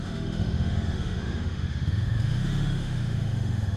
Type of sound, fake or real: fake